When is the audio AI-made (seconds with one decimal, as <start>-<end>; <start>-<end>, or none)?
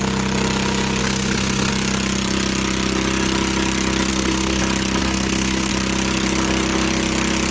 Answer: 1.0-1.7; 4.1-4.6; 5.0-5.7